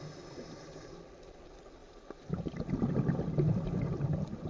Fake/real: real